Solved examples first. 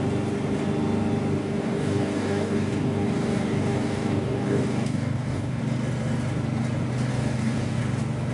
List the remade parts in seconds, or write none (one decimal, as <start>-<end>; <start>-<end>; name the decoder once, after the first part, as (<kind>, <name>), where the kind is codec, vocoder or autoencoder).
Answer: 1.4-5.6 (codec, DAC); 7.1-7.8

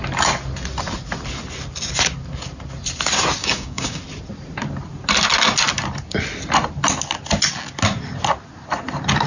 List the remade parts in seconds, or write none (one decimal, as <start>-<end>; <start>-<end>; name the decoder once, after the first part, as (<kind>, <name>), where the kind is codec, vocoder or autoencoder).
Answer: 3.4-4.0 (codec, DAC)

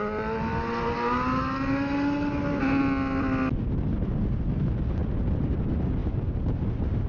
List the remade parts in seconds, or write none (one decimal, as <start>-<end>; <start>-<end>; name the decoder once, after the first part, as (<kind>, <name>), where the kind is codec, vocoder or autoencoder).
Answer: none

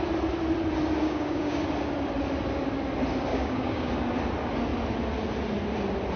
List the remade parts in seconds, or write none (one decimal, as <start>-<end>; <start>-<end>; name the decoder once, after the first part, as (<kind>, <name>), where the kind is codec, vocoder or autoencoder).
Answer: 1.0-1.6 (codec, DAC); 3.3-3.9